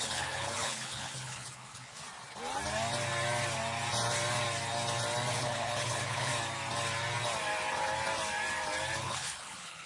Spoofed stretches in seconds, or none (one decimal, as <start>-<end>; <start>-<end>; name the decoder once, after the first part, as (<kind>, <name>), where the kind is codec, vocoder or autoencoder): 0.0-2.0 (codec, HILCodec); 5.3-6.3; 9.0-9.9